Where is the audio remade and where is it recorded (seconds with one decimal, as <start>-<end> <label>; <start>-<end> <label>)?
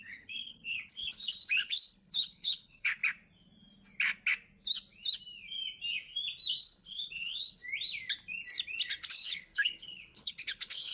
0.0-3.0 remade; 3.0-6.6 recorded; 6.6-7.6 remade; 7.6-9.1 recorded; 9.1-10.9 remade